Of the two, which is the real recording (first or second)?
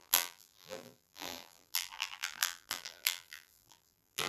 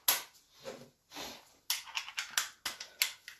second